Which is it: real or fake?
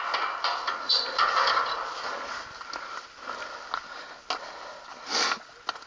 real